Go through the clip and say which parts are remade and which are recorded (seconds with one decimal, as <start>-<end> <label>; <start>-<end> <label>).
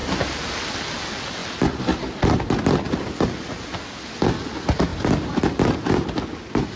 0.0-6.8 recorded